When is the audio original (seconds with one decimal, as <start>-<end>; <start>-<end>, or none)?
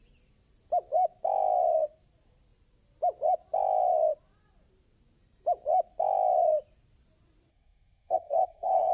0.0-7.5